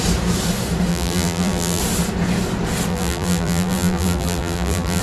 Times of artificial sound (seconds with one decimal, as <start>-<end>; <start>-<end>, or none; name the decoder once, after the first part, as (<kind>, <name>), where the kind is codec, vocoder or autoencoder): 0.9-1.8 (vocoder, BigVGAN v2); 2.9-5.0